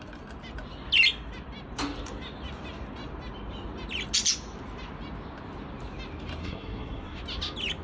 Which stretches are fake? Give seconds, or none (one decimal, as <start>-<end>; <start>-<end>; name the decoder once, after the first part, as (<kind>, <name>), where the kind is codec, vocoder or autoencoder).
6.4-7.2 (codec, SNAC)